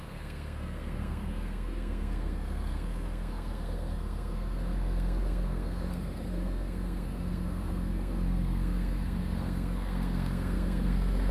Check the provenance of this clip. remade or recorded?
remade